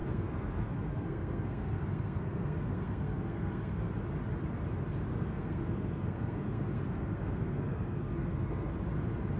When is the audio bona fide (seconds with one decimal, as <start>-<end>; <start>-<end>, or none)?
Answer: 3.9-5.1; 8.7-9.4